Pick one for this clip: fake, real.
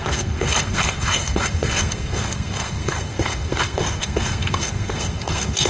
fake